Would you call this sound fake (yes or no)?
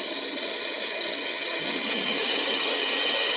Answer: yes